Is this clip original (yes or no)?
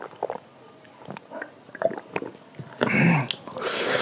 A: yes